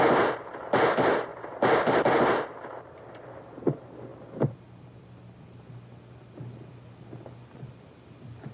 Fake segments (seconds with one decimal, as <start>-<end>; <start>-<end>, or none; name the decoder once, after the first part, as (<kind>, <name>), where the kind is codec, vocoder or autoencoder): none